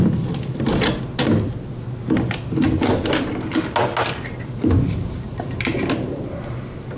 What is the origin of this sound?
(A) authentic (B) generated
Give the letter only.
A